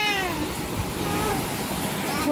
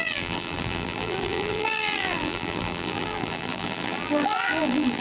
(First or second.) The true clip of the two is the first